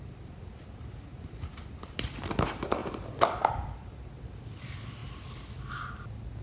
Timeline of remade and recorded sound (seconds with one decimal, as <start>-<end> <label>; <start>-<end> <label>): 0.0-2.8 recorded; 2.8-3.7 remade; 3.7-6.4 recorded